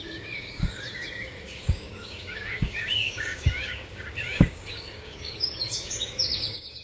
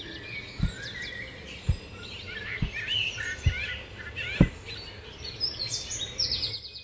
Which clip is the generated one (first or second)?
first